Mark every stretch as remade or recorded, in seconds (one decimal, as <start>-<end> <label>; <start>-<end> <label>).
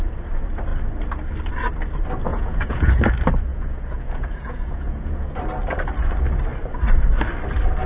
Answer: 0.0-2.3 recorded; 2.3-3.0 remade; 3.0-3.5 recorded; 3.5-5.4 remade; 5.4-7.9 recorded